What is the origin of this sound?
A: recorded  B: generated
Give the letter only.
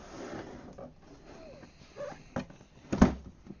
A